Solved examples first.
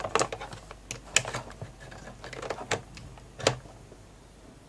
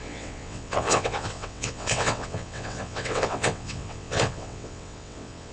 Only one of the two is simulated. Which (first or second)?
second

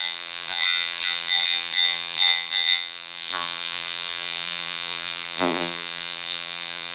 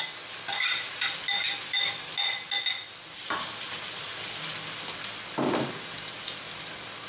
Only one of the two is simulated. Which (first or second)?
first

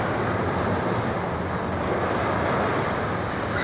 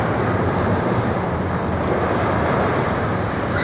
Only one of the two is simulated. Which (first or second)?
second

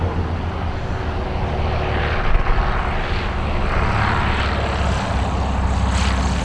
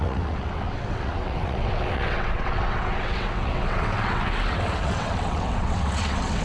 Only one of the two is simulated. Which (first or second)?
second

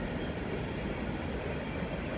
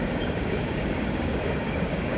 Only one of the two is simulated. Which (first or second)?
second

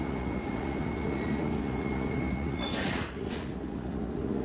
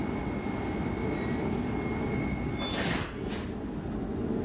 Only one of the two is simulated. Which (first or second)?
first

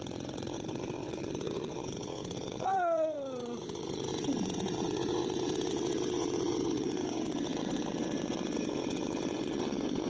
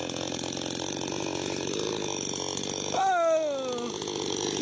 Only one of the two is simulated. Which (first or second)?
first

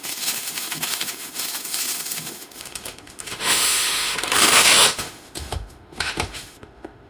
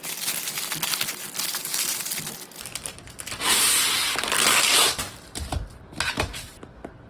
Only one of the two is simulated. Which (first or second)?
first